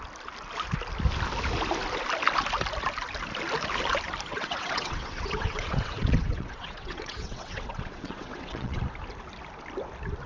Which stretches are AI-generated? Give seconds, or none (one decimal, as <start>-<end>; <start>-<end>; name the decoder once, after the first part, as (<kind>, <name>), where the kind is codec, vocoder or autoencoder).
4.3-8.8 (vocoder, WaveNeXt)